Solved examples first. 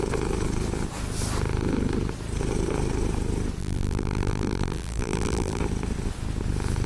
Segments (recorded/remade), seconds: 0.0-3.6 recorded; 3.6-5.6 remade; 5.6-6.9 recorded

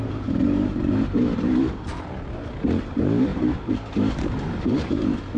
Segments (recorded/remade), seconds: 0.0-1.9 remade; 1.9-2.8 recorded; 2.8-5.4 remade

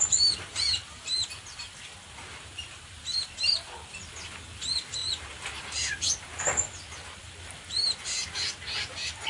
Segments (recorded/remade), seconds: 0.0-0.5 recorded; 0.5-1.1 remade; 1.1-9.3 recorded

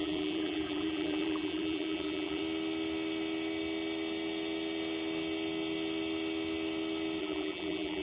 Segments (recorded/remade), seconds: 0.0-2.4 remade; 2.4-7.2 recorded; 7.2-8.0 remade

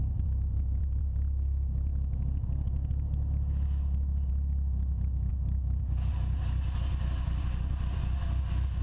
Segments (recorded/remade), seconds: 0.0-1.0 remade; 1.0-5.3 recorded; 5.3-6.1 remade; 6.1-8.8 recorded